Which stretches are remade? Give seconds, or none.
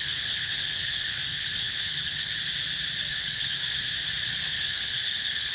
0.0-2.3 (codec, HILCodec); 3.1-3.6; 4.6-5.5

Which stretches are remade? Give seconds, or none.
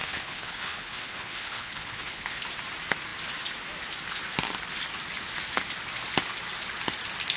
0.0-2.4 (codec, HILCodec)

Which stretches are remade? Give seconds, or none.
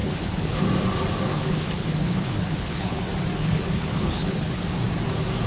0.0-0.6 (codec, HILCodec); 1.3-3.0; 3.4-4.6